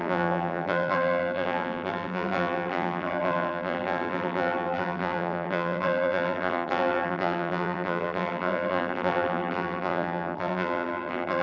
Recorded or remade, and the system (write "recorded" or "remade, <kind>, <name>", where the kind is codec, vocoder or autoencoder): remade, vocoder, BigVGAN v2